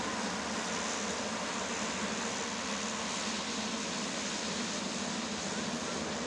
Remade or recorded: recorded